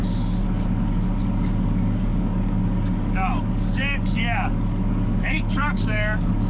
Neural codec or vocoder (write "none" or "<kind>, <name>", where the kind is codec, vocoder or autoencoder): codec, DAC